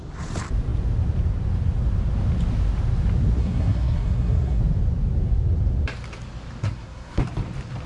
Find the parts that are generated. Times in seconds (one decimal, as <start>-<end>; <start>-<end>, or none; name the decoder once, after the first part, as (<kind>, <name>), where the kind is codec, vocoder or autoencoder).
3.4-4.6 (codec, SNAC); 6.6-7.2